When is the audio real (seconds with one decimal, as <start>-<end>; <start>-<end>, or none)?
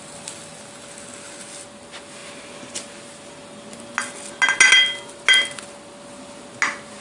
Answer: 0.0-7.0